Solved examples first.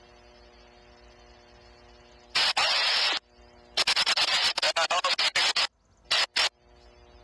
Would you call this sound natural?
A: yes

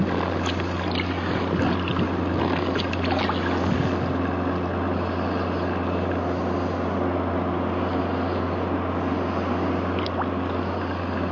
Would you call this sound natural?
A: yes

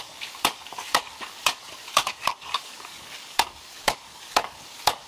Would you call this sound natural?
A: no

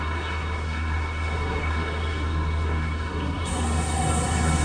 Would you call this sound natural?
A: no